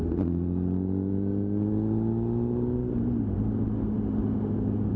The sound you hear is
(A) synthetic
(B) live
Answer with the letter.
B